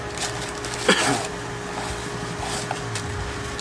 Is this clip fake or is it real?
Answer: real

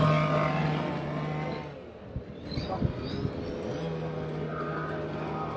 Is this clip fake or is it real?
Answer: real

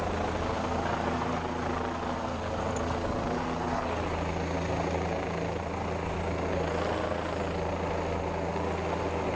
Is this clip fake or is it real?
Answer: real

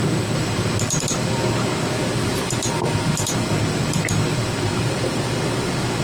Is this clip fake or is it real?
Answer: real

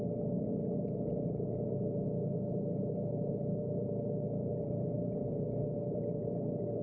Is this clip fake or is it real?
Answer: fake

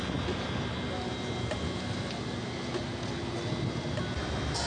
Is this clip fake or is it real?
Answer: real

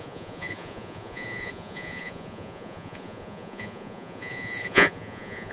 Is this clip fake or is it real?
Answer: fake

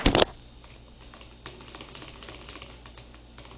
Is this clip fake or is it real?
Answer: real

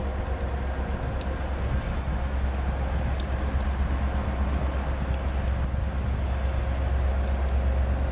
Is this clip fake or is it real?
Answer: real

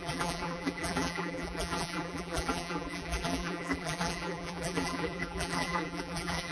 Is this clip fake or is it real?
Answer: fake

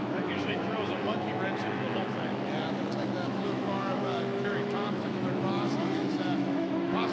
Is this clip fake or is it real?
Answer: fake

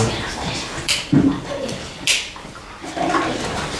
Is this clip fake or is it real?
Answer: fake